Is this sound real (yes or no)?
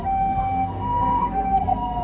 no